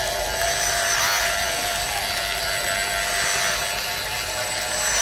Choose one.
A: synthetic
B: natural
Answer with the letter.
B